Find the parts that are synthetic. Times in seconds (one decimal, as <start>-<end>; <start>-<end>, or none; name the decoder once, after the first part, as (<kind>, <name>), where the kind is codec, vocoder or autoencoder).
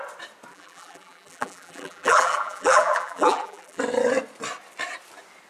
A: 0.5-3.8 (vocoder, BigVGAN v2)